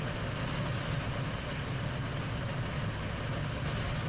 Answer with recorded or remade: recorded